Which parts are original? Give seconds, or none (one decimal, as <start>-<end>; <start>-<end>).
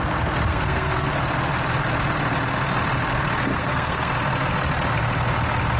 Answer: 0.0-0.5; 1.1-3.5; 4.1-5.8